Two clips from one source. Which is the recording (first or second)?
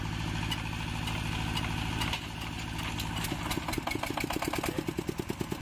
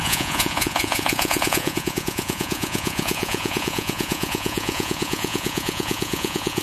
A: first